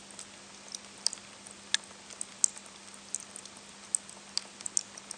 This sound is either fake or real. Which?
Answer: real